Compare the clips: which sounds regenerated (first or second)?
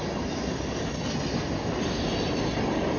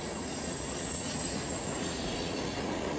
second